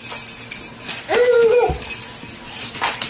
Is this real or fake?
real